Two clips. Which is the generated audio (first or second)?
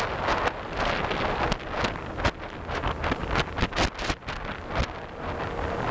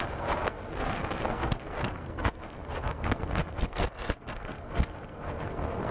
second